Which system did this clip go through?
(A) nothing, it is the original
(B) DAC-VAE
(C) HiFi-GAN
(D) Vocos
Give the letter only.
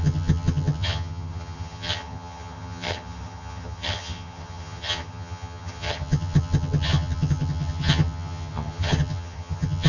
C